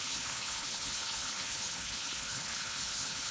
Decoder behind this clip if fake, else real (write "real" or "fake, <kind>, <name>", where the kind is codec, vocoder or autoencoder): fake, codec, HILCodec